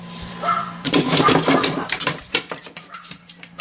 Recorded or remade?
remade